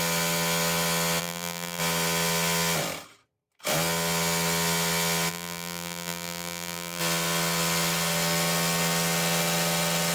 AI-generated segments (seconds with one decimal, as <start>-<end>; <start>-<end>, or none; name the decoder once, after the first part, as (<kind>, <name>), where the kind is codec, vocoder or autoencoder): 1.2-1.8 (vocoder, BigVGAN v2); 5.3-7.0